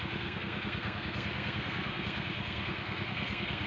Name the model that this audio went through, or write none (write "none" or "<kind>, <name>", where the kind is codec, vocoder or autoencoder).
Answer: codec, SNAC